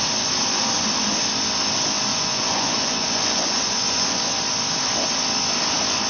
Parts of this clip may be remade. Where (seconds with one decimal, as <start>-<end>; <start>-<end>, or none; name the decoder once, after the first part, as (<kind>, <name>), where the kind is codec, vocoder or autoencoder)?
2.1-4.2 (vocoder, Vocos)

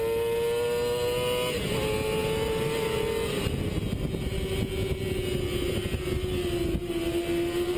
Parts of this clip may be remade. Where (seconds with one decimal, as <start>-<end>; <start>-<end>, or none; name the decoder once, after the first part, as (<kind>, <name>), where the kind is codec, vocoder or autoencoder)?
none

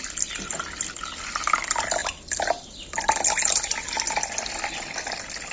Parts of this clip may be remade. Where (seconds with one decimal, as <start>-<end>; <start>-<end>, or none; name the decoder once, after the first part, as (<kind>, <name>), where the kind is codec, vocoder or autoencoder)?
none

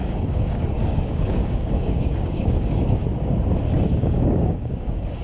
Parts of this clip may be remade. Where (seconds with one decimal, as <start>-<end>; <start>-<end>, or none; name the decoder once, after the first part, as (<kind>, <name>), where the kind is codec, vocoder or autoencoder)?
0.0-3.0 (codec, DAC); 4.0-5.2